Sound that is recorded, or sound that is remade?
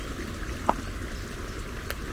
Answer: recorded